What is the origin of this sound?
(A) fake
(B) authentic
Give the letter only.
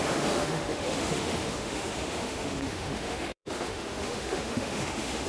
A